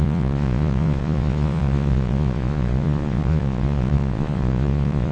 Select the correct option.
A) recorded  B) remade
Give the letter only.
B